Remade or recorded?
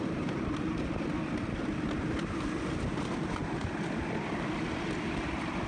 recorded